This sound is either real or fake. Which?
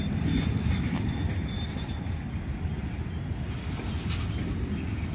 fake